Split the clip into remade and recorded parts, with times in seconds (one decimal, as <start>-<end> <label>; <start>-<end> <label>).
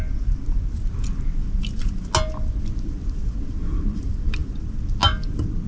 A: 0.0-5.7 recorded